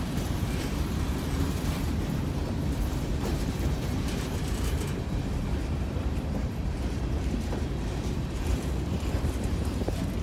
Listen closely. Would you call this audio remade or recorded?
remade